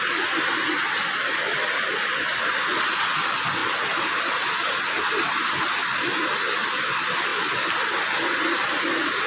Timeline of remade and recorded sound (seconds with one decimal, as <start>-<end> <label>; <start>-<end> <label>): 0.0-9.3 recorded